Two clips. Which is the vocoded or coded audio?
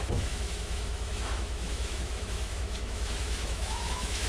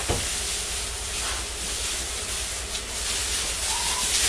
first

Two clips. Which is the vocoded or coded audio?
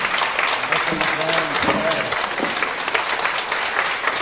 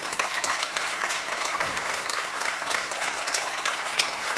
second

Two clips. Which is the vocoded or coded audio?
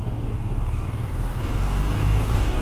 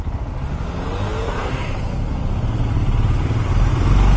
first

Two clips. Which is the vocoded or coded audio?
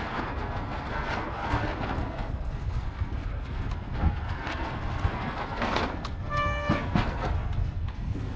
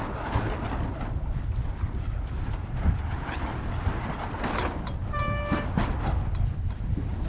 first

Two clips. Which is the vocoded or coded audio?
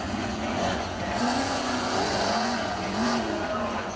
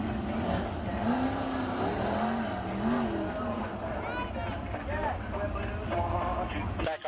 first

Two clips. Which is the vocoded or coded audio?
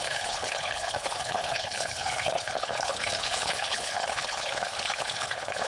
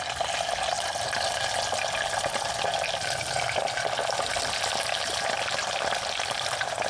first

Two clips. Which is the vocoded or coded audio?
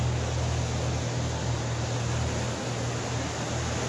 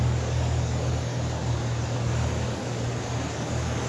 second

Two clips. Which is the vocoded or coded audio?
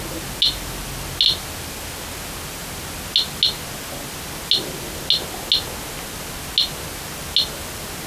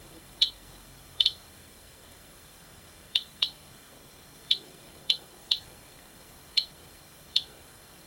second